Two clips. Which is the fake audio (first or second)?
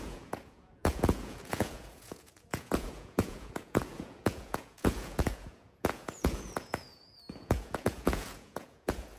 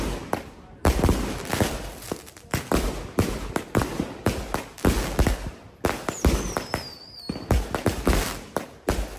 first